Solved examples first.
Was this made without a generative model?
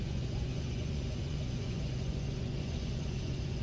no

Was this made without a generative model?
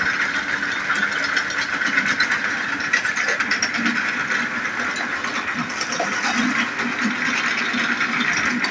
yes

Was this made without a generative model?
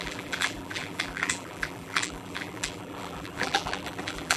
no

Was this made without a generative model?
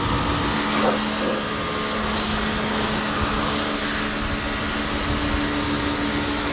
yes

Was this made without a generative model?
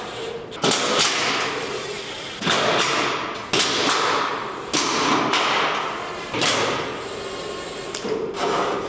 yes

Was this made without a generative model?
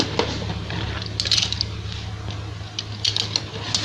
yes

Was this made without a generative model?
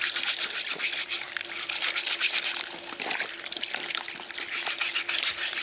yes